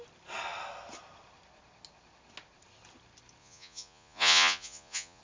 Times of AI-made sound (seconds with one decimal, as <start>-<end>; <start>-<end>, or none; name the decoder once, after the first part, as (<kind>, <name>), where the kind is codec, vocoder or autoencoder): 3.4-5.2 (vocoder, Vocos)